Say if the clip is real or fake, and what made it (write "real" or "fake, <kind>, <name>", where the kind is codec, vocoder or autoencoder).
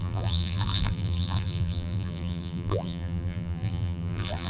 fake, vocoder, BigVGAN v2